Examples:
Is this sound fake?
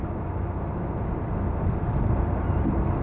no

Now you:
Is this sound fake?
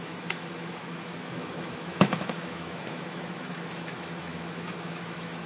yes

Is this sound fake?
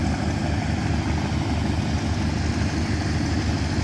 no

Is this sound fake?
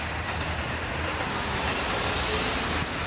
no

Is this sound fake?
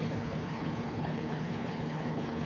yes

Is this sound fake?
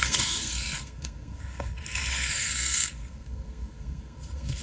yes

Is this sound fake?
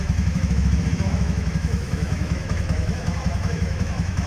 yes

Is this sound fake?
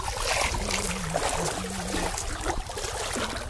no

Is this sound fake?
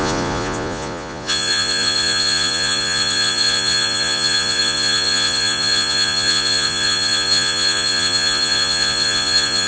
yes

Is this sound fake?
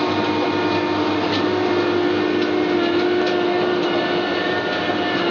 no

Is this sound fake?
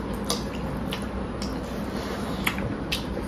no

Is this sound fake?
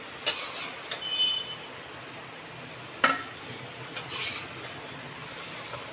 no